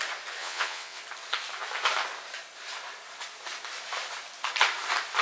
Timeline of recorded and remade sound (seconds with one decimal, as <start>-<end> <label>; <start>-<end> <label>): 0.0-0.4 recorded; 0.4-1.0 remade; 1.0-5.2 recorded